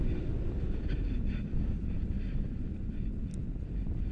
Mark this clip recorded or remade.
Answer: recorded